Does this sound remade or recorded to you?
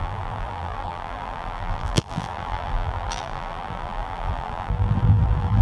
remade